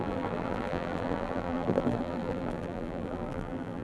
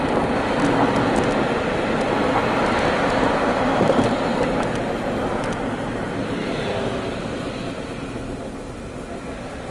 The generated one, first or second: first